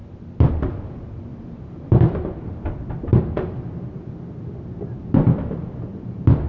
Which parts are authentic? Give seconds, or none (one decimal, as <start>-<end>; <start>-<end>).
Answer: 0.0-1.3; 2.0-6.5